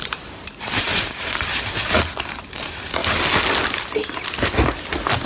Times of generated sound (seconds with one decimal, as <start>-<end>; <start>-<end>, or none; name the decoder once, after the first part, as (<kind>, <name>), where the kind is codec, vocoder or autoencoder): 0.0-3.0 (vocoder, BigVGAN v2)